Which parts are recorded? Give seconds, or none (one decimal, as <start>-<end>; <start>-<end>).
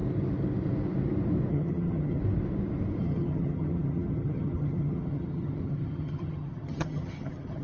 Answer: 0.0-1.5; 2.2-3.0